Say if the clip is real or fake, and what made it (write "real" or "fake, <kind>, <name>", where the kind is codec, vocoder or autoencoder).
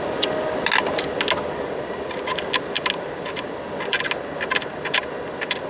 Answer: real